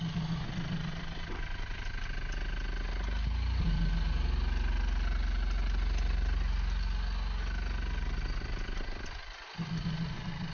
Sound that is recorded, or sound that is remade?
recorded